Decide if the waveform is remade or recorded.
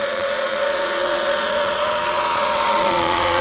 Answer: remade